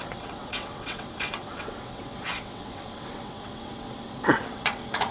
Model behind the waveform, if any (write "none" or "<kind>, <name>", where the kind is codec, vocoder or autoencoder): vocoder, WaveNeXt